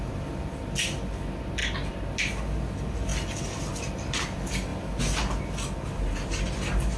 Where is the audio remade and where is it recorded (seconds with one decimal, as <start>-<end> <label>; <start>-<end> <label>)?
0.0-4.7 recorded; 4.7-5.2 remade; 5.2-7.0 recorded